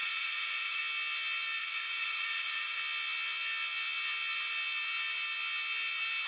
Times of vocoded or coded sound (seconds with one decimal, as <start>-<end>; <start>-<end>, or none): 0.0-0.8; 1.6-2.8